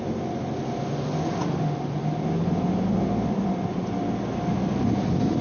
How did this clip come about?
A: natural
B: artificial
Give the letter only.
A